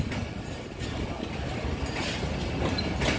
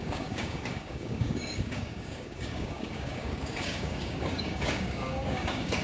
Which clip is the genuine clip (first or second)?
first